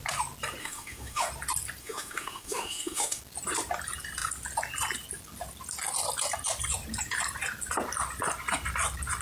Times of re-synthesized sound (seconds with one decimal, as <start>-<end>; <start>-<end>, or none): 0.6-1.3; 1.8-3.2